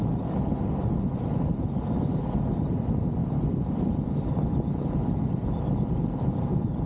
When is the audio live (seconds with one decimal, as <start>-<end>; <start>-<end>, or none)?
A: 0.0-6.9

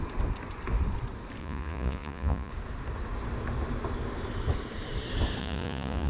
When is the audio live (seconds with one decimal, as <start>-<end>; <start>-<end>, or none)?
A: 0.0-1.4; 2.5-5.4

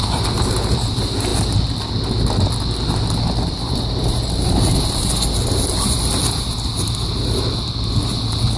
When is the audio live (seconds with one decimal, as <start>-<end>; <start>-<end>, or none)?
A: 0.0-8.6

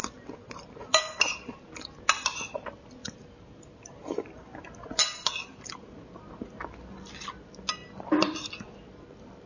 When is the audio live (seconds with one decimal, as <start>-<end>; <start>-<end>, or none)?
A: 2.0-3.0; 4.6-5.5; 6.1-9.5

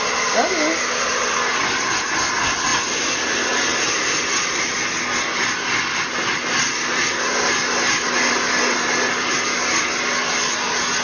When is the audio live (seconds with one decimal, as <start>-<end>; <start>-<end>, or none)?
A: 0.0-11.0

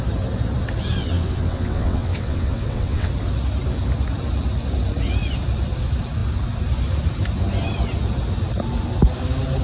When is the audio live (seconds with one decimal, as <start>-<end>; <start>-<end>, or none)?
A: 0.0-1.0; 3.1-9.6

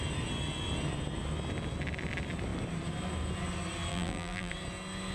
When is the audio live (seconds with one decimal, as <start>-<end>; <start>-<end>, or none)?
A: 0.0-3.9; 4.5-5.1